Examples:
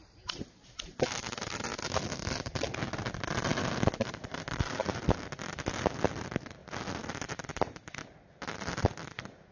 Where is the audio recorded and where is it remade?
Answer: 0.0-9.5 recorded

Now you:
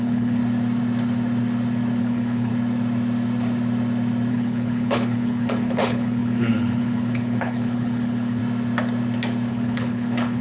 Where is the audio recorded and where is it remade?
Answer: 0.0-0.4 remade; 0.4-2.0 recorded; 2.0-2.5 remade; 2.5-4.3 recorded; 4.3-8.4 remade; 8.4-9.5 recorded; 9.5-10.4 remade

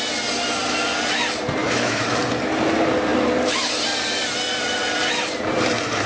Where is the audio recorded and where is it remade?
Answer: 0.0-1.6 recorded; 1.6-2.2 remade; 2.2-6.1 recorded